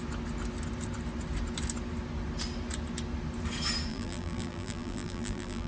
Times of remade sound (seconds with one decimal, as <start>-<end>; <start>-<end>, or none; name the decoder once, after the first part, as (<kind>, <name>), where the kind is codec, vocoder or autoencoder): 3.9-5.7 (vocoder, BigVGAN v2)